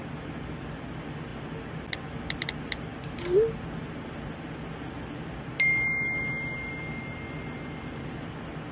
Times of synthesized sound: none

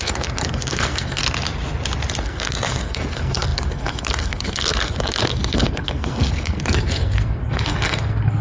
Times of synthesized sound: 0.0-1.2 (codec, SNAC); 2.2-8.4

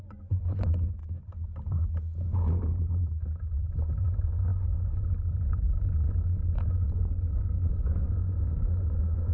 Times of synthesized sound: 0.0-1.0 (vocoder, Vocos); 4.0-9.3

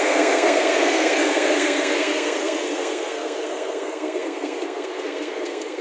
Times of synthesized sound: 0.0-5.8 (codec, SNAC)

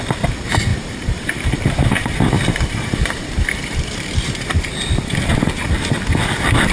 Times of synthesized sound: 0.7-4.7 (vocoder, BigVGAN v2)

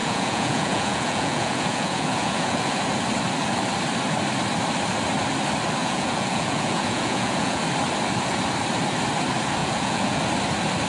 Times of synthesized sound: 0.0-2.8 (vocoder, Vocos); 5.8-7.6; 9.6-10.2

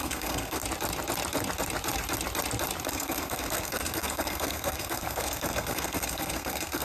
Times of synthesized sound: 0.0-0.6 (codec, SNAC); 2.9-6.8

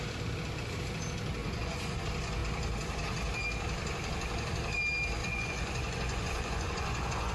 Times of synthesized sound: 1.4-2.0 (vocoder, Vocos); 5.2-7.3